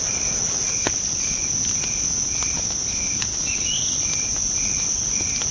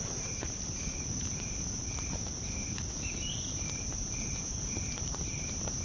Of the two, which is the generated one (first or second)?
second